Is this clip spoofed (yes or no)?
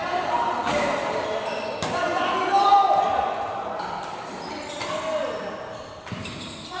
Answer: no